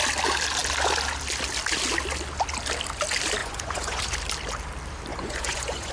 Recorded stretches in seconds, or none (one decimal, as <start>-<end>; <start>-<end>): 0.0-3.4; 4.0-5.1